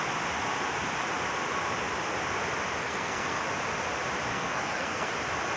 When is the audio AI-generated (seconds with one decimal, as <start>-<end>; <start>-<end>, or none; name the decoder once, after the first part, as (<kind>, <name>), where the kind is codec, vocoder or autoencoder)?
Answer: 2.8-3.4 (codec, SNAC); 4.3-5.1